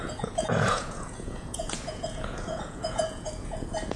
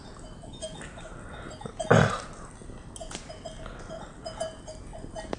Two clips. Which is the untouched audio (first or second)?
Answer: second